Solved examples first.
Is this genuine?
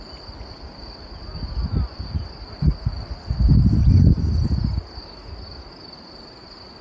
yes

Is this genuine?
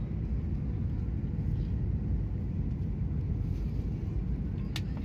yes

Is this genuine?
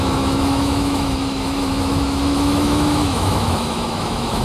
no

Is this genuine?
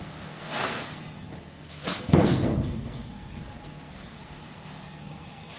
no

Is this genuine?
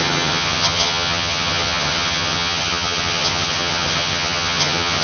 no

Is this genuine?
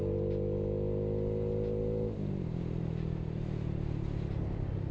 yes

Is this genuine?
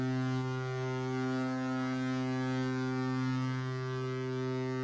yes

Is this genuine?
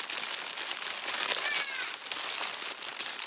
yes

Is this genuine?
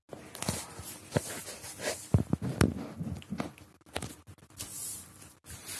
yes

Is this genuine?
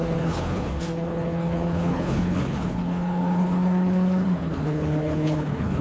no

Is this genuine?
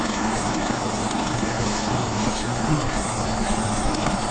no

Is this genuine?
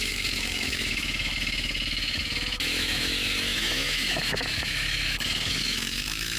no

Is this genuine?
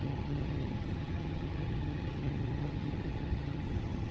no